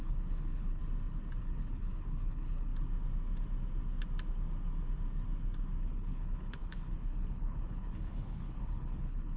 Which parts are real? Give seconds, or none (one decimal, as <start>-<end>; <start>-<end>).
0.8-1.4; 2.7-5.8